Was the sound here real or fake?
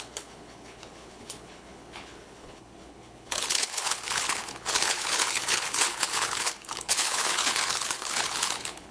fake